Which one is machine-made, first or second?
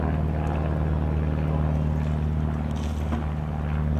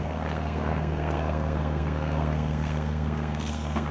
second